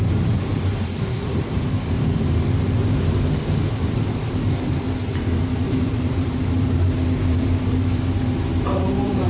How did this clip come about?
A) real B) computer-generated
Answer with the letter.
B